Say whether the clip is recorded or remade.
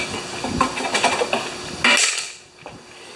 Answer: recorded